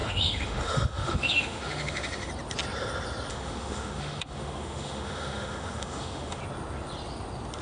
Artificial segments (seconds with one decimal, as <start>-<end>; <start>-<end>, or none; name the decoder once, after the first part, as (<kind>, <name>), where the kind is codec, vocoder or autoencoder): 0.0-2.3 (autoencoder, DAC-VAE); 3.3-6.4